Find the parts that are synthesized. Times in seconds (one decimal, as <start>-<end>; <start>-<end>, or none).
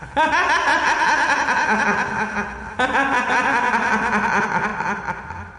none